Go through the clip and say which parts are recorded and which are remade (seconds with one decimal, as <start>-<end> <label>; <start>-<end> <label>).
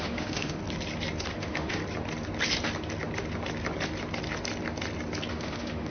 0.0-0.6 remade; 0.6-1.3 recorded; 1.3-1.8 remade; 1.8-5.3 recorded; 5.3-5.9 remade